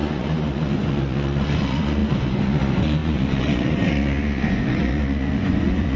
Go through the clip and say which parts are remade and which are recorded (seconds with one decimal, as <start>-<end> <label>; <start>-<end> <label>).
0.0-6.0 remade